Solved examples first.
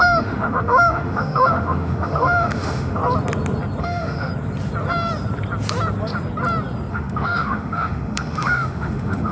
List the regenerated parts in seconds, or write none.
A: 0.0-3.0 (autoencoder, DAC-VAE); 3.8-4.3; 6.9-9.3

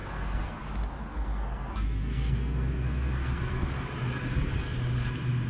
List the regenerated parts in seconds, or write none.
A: 0.0-0.6 (codec, SNAC); 1.1-3.7

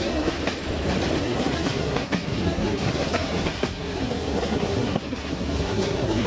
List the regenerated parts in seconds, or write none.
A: 0.0-0.4 (codec, SNAC); 1.2-6.3